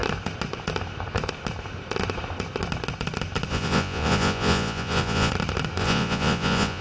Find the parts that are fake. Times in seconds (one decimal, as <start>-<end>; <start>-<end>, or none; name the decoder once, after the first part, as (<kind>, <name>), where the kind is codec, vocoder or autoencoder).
3.5-5.3 (vocoder, Vocos); 5.8-6.8